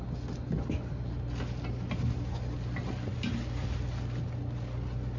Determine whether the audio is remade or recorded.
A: recorded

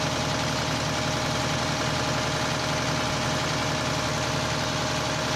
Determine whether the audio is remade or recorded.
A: recorded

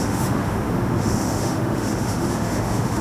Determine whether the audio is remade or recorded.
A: remade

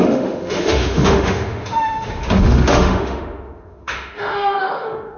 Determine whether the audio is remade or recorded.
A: remade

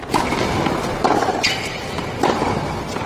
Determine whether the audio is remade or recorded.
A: recorded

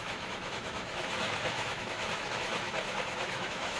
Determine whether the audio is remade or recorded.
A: remade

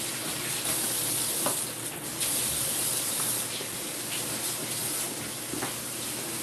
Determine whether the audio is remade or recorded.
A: recorded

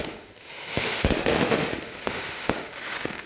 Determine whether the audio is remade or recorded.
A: remade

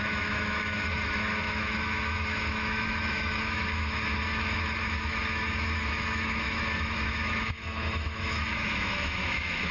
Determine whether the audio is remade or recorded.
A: remade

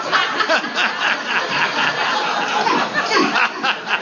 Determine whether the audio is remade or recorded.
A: recorded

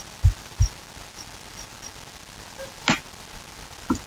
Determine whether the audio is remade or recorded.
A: recorded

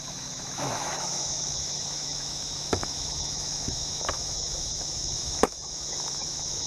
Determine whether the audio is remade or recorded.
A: remade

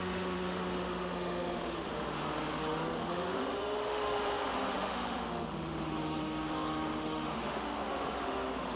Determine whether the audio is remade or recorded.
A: remade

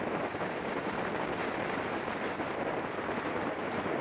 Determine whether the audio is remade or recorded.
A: recorded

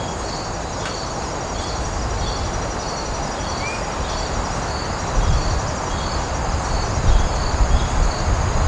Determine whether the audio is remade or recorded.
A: recorded